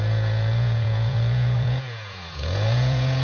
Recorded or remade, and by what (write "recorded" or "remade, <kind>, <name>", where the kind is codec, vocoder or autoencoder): remade, vocoder, Vocos